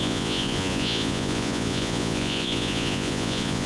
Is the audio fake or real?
fake